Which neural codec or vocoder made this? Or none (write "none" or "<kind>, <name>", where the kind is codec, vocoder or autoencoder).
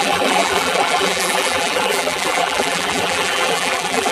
vocoder, BigVGAN v2